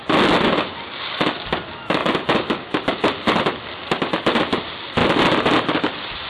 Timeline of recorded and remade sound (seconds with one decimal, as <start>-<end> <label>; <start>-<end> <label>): 0.0-6.3 recorded